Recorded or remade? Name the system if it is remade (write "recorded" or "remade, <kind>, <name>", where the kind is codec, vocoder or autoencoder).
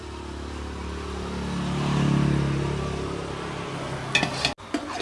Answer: recorded